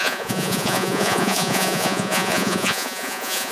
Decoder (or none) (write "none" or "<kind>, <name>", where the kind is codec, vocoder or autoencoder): vocoder, Vocos